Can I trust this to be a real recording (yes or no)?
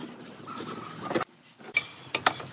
yes